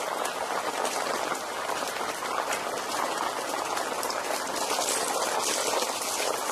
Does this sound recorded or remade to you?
recorded